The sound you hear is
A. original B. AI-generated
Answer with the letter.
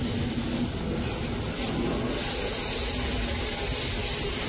A